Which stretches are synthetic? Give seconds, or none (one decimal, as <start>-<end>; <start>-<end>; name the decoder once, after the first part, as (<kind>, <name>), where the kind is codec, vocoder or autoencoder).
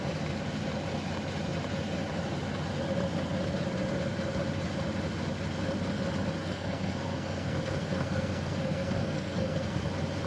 6.4-9.9 (codec, SNAC)